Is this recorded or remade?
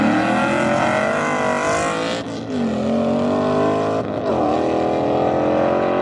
recorded